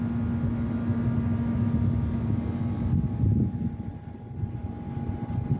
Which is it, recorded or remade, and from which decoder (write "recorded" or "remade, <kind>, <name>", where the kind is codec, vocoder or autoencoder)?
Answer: recorded